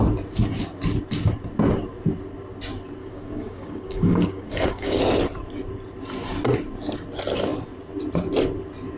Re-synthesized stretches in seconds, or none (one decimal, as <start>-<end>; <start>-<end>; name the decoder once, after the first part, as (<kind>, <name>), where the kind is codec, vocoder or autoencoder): 3.0-5.0 (codec, DAC)